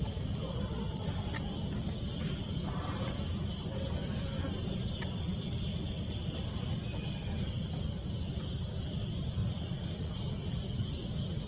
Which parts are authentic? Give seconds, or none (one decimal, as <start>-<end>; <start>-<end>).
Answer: 0.0-9.4; 10.1-11.5